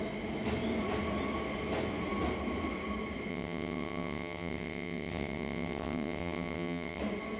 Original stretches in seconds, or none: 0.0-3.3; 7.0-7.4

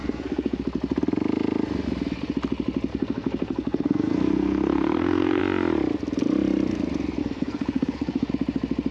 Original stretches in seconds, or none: 0.6-2.9; 5.4-7.2; 8.3-8.9

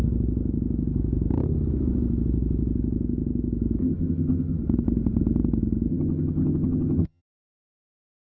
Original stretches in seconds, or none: 0.0-3.8; 4.6-5.9; 7.2-8.2

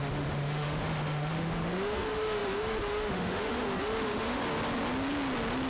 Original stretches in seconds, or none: 4.4-5.7

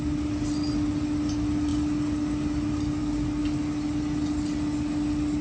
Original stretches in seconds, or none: 0.0-5.4